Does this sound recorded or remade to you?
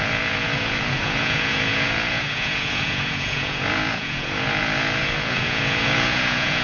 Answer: remade